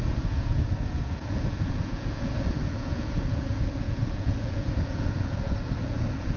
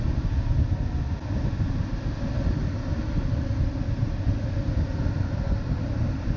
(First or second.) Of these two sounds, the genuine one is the second